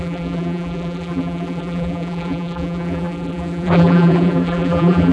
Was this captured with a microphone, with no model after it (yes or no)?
no